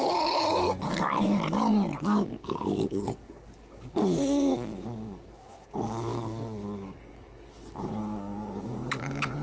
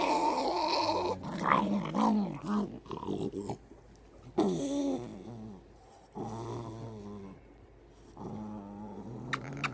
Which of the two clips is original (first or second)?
second